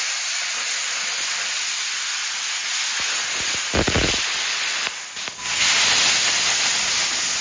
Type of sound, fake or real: real